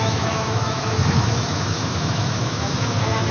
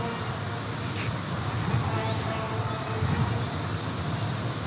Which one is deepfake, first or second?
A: first